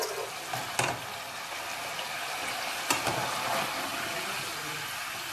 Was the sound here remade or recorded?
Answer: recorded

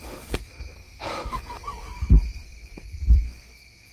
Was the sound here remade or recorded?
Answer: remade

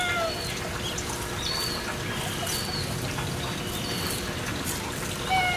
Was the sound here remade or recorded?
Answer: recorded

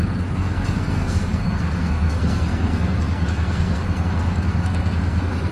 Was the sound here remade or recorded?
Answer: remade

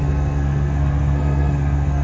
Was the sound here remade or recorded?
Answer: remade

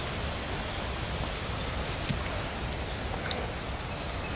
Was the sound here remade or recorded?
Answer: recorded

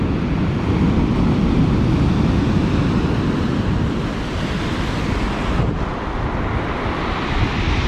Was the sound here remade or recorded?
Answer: recorded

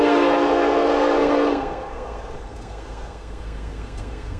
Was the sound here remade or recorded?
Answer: remade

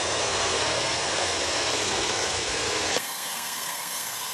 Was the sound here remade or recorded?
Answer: remade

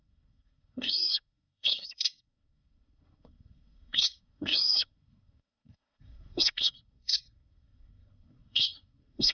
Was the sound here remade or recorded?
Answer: remade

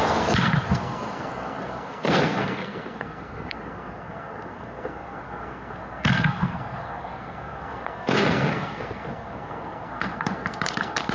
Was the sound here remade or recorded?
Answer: remade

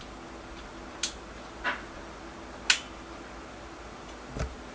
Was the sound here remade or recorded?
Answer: recorded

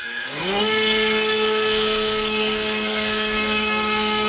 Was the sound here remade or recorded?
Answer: remade